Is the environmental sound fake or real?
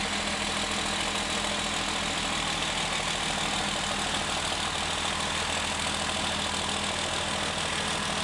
real